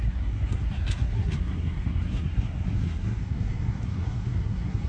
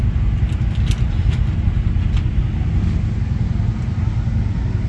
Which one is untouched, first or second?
second